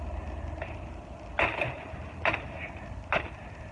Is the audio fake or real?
real